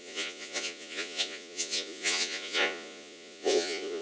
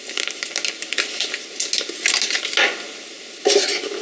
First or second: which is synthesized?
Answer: first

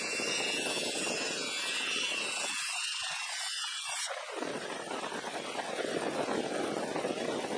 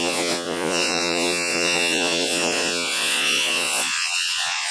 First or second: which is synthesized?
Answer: second